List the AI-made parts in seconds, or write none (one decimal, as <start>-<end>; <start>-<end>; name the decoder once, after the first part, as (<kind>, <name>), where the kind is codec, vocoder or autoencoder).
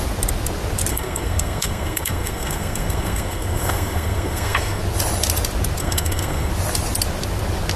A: 0.9-4.8 (codec, SNAC); 5.8-6.5